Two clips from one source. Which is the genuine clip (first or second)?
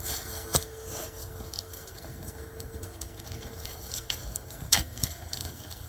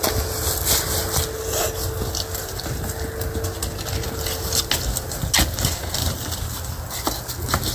second